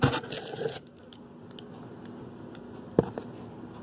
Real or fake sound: real